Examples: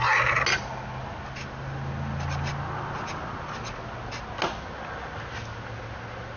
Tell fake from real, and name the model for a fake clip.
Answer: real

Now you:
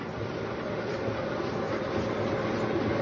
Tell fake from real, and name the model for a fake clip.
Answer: real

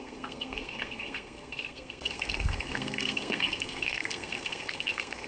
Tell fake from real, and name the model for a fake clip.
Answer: fake, codec, SNAC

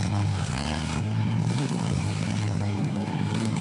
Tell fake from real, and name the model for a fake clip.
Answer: fake, codec, SNAC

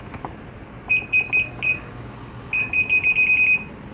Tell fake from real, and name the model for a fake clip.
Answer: real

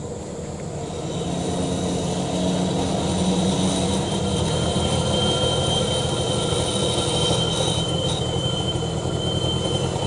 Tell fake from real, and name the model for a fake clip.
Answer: real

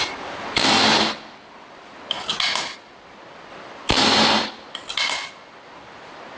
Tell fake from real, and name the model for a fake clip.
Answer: real